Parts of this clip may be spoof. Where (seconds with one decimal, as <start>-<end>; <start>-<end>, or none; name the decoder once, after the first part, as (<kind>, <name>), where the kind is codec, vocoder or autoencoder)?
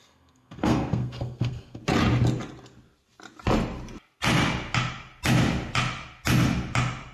0.0-1.8 (codec, SNAC)